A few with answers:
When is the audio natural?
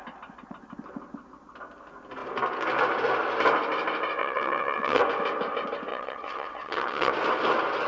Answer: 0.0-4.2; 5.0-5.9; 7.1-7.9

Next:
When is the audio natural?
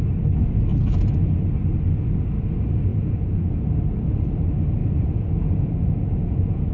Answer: 0.0-0.7; 1.3-2.9; 3.5-4.8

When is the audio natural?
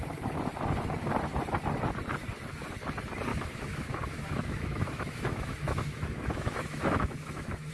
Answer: 0.0-3.3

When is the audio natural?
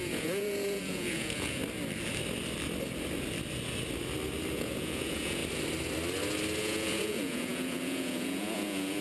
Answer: 1.6-4.5; 5.4-6.6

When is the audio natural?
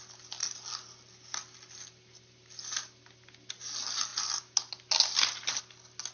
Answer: 0.0-6.1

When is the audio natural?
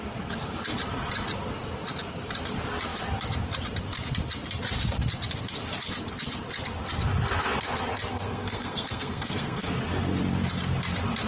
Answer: 0.0-8.1; 9.7-11.3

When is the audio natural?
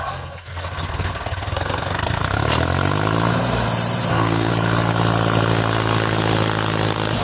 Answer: 2.2-4.1; 4.5-7.2